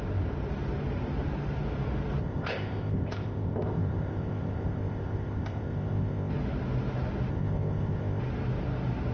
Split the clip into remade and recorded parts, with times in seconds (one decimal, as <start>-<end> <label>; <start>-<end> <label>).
0.0-2.2 recorded; 2.2-6.3 remade; 6.3-7.3 recorded; 7.3-8.2 remade; 8.2-9.1 recorded